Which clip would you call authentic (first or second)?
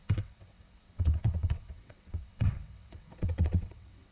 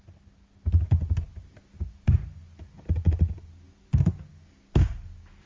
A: second